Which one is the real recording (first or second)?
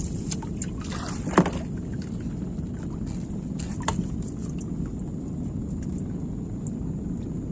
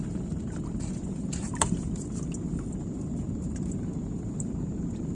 first